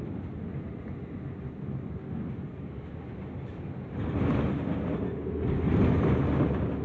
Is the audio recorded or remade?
recorded